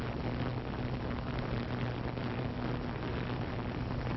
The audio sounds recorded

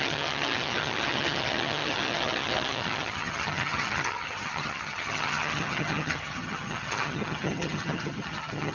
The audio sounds remade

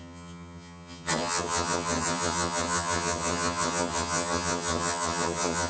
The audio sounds remade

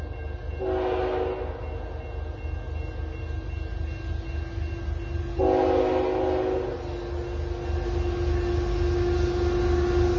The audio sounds recorded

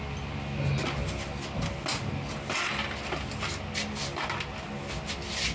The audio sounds recorded